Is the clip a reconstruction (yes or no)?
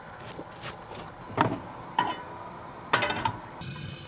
no